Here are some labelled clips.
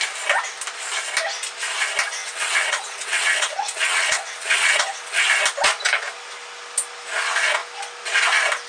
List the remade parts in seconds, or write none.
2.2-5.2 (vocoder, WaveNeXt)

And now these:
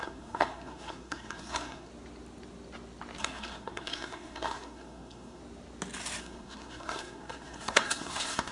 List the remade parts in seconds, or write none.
0.0-1.9 (codec, SNAC); 3.2-5.4; 6.2-8.5

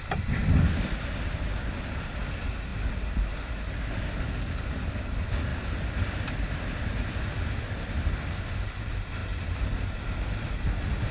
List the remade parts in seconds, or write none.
none

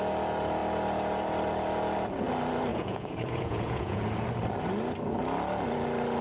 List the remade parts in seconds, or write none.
2.7-4.0 (vocoder, Vocos)

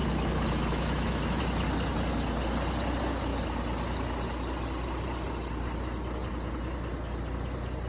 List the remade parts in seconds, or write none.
0.0-1.4 (autoencoder, DAC-VAE)

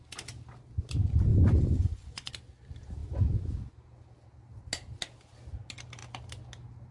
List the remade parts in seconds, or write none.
1.3-2.3 (vocoder, Vocos)

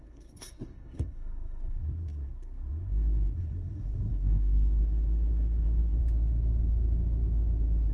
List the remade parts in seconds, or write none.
0.0-6.0 (codec, SNAC)